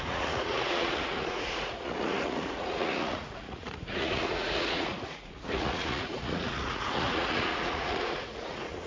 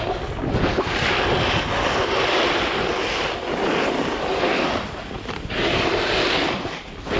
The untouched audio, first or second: second